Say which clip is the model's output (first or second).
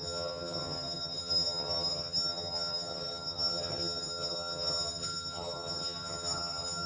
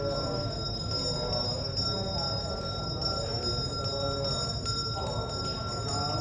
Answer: first